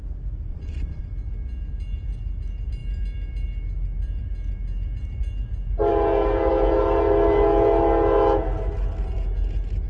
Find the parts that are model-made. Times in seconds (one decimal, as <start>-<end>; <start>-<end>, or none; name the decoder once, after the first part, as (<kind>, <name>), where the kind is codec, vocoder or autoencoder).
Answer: 0.5-1.0 (vocoder, Vocos)